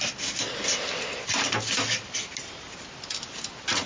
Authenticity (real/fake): real